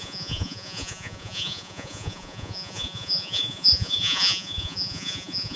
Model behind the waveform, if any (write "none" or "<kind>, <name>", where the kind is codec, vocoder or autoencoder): vocoder, Vocos